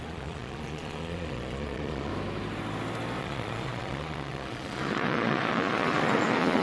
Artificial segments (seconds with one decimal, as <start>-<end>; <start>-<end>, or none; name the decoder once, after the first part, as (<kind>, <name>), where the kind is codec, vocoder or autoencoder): 0.0-2.1 (vocoder, Vocos); 3.2-6.6